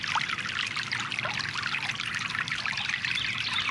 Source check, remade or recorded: recorded